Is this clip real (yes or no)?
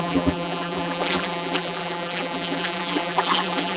no